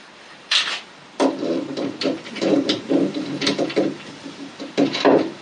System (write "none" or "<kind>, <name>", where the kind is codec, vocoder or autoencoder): vocoder, BigVGAN v2